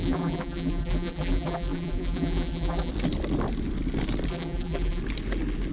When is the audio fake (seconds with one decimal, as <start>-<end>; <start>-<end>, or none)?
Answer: 0.0-2.9; 4.3-5.0